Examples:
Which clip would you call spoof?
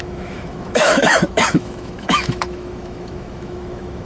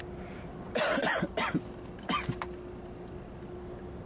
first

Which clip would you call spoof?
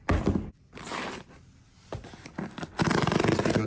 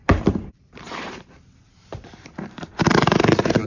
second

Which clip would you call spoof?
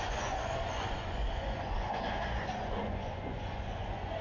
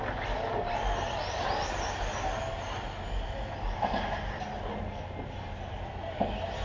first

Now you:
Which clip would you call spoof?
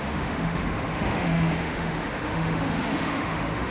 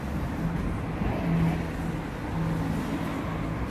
first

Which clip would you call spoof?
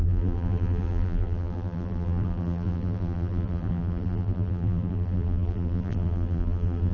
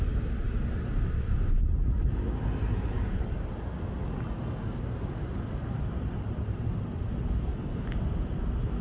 first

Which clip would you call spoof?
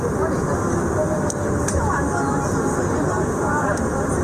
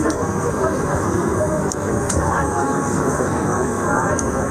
second